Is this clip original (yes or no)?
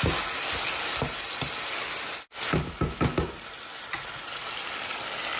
yes